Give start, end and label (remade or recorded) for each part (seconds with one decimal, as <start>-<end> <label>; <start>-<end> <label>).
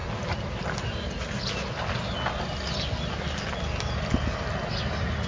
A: 0.0-5.3 recorded